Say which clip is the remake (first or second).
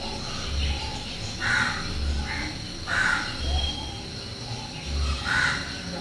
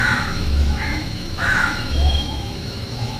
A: second